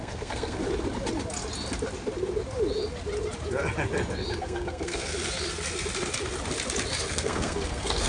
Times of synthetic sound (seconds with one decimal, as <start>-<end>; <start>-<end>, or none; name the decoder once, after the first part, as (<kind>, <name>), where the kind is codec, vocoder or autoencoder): 0.0-0.6 (codec, SNAC); 4.4-5.1; 7.1-8.1

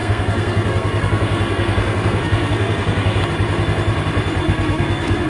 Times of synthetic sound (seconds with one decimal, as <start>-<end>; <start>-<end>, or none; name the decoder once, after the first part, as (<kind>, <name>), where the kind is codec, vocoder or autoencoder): 0.0-3.2 (codec, SNAC); 4.4-5.3

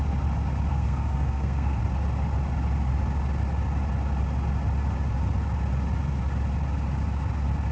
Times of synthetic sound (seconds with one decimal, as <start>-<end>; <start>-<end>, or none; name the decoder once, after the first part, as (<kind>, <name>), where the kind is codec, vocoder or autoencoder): 0.7-1.8 (codec, SNAC)